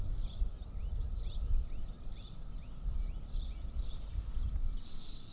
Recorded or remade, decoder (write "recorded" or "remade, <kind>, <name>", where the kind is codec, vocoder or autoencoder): recorded